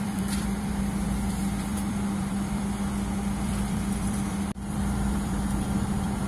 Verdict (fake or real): fake